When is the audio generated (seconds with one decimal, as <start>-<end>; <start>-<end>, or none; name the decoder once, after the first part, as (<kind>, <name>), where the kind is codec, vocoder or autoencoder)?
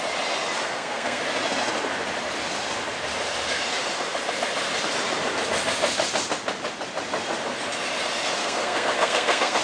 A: 0.6-1.2 (codec, SNAC); 8.4-9.6